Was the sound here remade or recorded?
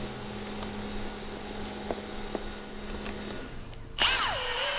recorded